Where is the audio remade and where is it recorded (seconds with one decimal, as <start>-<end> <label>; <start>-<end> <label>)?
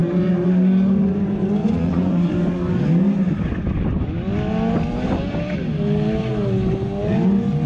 0.0-1.6 recorded; 1.6-2.3 remade; 2.3-7.7 recorded